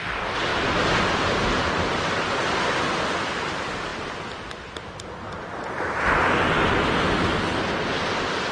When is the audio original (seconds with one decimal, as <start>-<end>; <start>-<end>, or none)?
0.0-8.5